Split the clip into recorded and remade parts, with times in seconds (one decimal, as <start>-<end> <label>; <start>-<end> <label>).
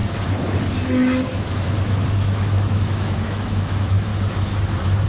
0.0-1.4 recorded; 1.4-4.1 remade; 4.1-5.1 recorded